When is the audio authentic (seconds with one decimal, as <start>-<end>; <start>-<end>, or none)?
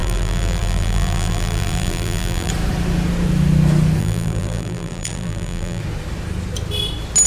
2.5-4.0; 5.8-7.3